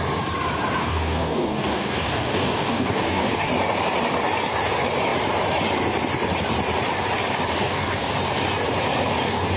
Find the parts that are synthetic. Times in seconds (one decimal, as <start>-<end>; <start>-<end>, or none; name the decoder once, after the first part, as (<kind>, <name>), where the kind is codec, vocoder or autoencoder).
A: 0.8-3.5 (codec, DAC); 7.6-8.1

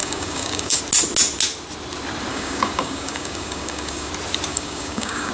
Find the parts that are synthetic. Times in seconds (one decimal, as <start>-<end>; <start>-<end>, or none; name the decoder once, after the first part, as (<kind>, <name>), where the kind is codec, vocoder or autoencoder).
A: 0.0-0.8 (codec, DAC); 2.3-4.1; 4.5-5.3

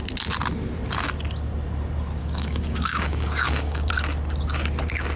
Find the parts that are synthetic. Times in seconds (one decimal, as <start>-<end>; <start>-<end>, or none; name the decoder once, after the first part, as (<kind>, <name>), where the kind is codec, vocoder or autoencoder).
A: 2.2-3.9 (codec, DAC)

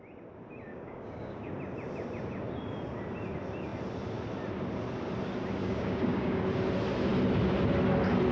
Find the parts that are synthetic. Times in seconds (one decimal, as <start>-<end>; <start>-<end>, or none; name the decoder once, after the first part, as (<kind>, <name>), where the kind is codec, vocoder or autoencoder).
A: 0.7-1.5 (codec, DAC); 5.6-6.4

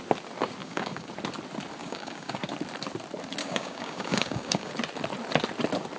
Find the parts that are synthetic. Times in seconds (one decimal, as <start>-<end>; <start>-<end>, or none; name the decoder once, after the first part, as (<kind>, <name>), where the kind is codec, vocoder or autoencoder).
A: 0.6-1.1 (codec, DAC); 1.8-2.4; 3.4-4.7

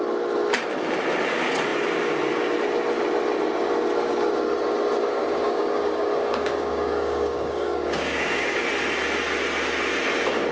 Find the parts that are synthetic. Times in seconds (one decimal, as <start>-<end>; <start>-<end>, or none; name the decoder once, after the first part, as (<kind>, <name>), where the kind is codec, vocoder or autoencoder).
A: 5.1-8.6 (codec, DAC)

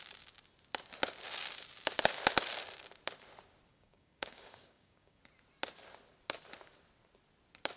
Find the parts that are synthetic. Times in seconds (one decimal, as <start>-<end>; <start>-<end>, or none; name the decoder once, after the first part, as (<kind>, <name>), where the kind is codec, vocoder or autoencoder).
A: 3.7-5.2 (codec, DAC)

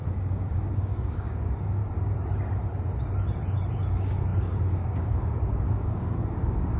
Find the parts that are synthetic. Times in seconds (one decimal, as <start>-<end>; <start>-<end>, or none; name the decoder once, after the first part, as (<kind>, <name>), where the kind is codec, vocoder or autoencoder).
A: 0.0-1.8 (codec, DAC); 3.7-6.8